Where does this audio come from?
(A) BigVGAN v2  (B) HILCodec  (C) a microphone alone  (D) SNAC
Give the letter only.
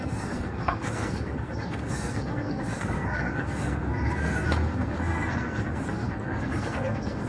D